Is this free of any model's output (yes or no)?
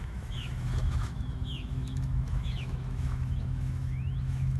no